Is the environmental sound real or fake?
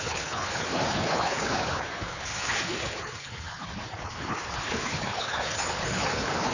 fake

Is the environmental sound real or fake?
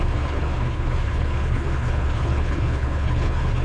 fake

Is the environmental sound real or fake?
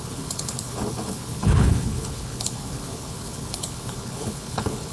fake